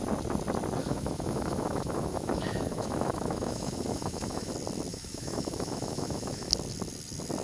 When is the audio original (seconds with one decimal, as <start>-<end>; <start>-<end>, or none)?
0.0-0.8; 4.5-4.9; 6.5-7.4